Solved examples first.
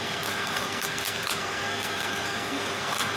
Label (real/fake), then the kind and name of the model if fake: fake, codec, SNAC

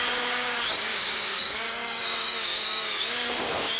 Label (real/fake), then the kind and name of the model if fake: fake, codec, DAC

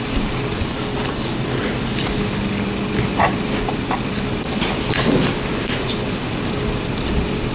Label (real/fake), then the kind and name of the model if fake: real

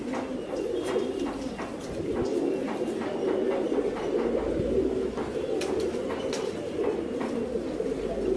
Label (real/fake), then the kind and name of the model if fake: real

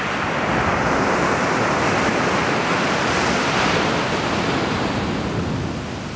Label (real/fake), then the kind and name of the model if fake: real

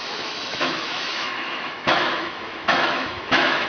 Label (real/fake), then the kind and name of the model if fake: fake, autoencoder, DAC-VAE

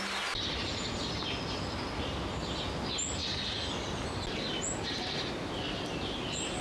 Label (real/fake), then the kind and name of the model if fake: real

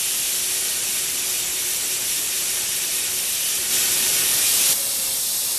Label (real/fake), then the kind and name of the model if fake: fake, vocoder, BigVGAN v2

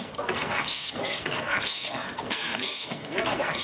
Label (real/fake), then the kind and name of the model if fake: fake, codec, SNAC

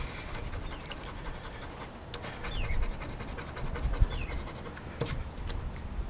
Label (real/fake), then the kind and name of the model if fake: real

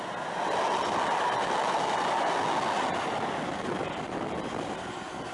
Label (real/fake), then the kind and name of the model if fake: real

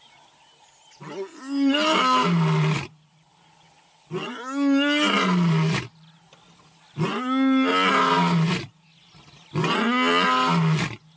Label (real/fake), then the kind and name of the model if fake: real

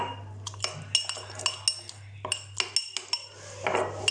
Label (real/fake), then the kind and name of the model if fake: real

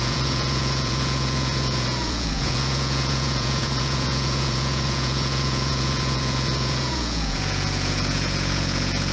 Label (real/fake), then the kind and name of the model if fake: fake, vocoder, Vocos